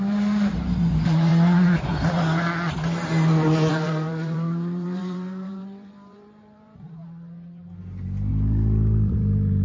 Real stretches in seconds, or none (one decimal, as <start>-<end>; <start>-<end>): 1.3-3.7; 7.0-8.3